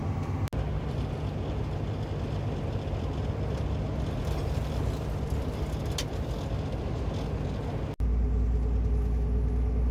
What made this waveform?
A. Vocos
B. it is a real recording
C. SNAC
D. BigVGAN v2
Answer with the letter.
B